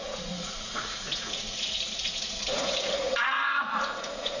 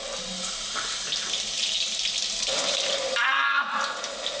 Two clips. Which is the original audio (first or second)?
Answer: second